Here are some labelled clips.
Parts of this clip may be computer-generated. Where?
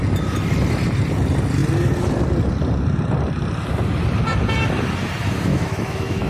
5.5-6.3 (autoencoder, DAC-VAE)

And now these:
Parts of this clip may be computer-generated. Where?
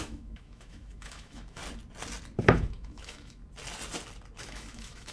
0.0-1.6 (autoencoder, DAC-VAE); 2.4-3.4; 4.4-5.1